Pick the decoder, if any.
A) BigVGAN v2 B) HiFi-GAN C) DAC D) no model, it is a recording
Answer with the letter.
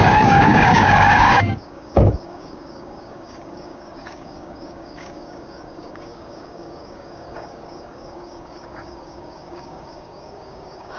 C